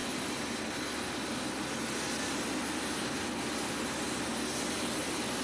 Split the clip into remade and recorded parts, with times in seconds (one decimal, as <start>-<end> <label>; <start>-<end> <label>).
0.0-5.4 recorded